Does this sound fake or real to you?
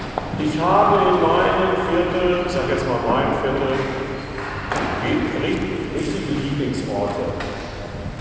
real